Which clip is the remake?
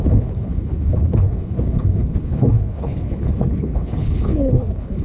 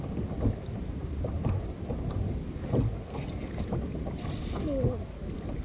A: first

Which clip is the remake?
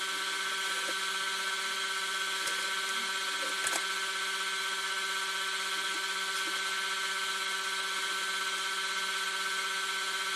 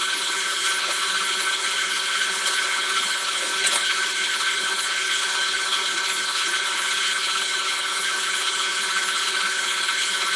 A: second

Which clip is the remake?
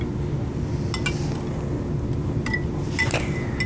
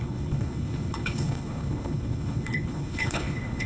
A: second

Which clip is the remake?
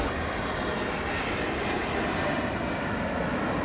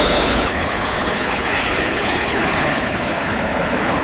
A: second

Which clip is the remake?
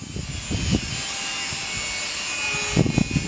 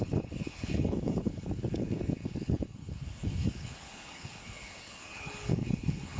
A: second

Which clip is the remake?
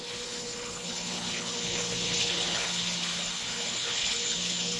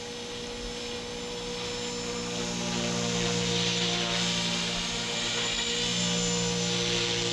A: first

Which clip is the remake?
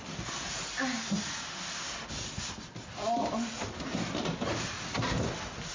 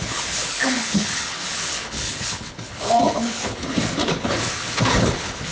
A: second